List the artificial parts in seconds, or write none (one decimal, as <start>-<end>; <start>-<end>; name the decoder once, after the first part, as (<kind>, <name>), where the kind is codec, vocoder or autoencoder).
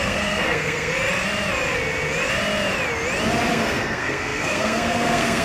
0.0-0.9 (codec, SNAC); 3.5-5.4